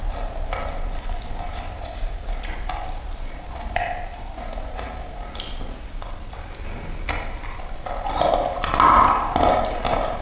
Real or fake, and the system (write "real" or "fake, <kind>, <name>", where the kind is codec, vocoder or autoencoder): real